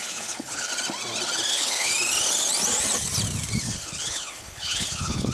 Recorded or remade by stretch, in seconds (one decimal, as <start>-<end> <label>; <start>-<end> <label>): 0.0-0.7 remade; 0.7-1.5 recorded; 1.5-1.9 remade; 1.9-3.6 recorded; 3.6-5.3 remade